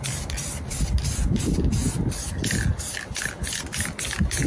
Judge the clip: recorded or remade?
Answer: recorded